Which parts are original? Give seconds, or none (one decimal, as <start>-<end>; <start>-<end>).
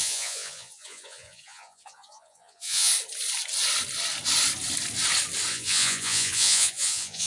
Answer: 2.9-5.5